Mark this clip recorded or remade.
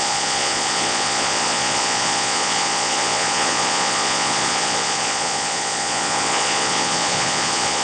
remade